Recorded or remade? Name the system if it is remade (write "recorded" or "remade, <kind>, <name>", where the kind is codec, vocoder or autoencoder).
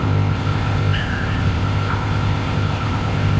remade, codec, ZipCodec